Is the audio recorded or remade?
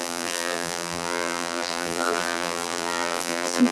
remade